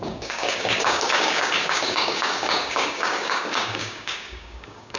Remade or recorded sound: remade